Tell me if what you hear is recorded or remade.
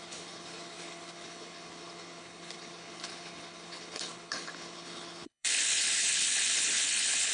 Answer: remade